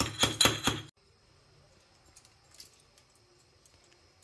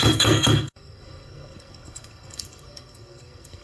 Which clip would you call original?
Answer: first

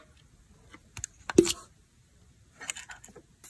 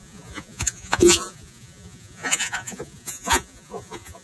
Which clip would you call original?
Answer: first